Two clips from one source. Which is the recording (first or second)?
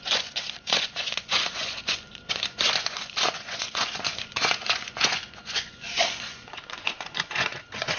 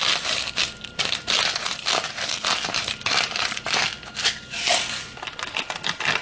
second